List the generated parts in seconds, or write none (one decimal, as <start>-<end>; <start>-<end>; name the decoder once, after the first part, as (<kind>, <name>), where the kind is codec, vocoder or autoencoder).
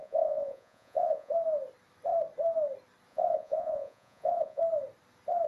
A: 0.0-1.3 (vocoder, Vocos); 3.1-4.6